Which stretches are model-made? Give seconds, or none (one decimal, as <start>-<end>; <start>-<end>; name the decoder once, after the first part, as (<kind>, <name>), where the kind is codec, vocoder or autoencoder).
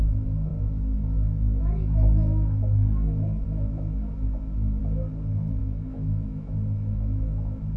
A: 0.5-4.8 (autoencoder, DAC-VAE); 5.6-7.8